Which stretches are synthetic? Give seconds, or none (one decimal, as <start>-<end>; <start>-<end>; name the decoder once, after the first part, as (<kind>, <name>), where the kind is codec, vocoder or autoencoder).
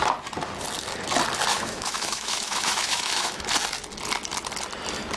1.5-3.4 (autoencoder, DAC-VAE)